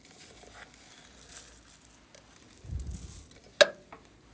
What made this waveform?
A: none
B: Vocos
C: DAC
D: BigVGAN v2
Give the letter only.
A